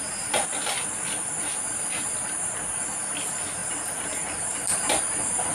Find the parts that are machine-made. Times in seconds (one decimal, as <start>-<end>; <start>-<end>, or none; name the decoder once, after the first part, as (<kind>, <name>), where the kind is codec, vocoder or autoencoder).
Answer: none